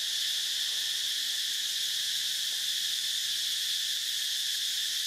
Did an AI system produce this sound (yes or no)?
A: no